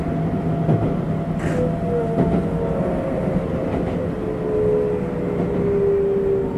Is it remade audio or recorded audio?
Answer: recorded